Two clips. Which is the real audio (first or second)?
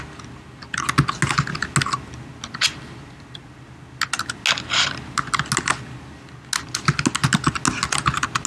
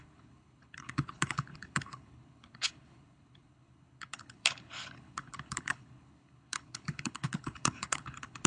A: first